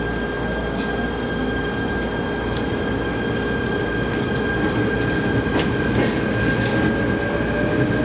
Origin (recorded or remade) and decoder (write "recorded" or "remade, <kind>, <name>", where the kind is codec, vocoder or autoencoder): recorded